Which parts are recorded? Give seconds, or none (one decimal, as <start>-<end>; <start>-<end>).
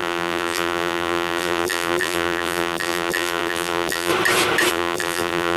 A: 4.1-4.7